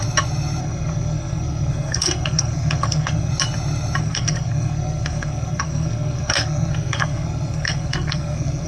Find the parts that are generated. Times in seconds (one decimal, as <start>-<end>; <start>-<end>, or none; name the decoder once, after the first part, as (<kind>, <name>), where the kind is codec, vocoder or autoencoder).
0.6-3.3 (codec, SNAC); 4.0-8.7